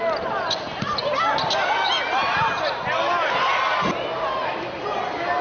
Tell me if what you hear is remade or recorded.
recorded